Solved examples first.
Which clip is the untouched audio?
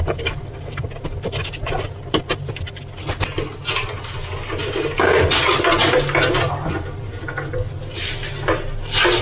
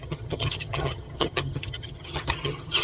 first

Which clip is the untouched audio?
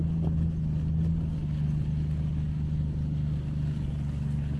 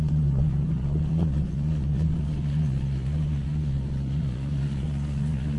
first